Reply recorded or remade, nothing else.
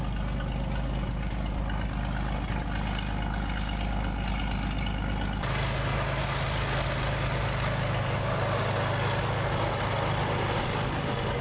recorded